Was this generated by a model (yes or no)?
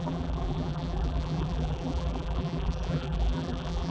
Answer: yes